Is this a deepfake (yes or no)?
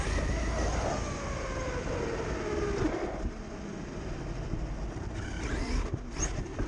no